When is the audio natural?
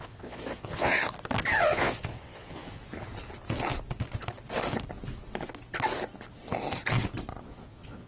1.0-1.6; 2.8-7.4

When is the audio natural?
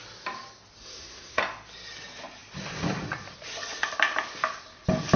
0.0-0.8; 1.4-5.2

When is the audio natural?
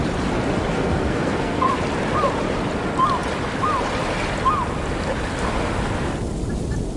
0.0-0.7; 1.7-7.0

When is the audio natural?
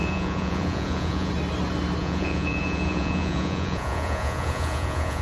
1.3-2.0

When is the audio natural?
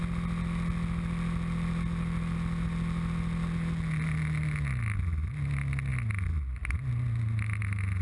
0.0-8.0